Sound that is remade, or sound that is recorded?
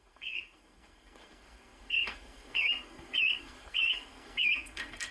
remade